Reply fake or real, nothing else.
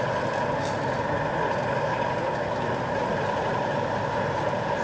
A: real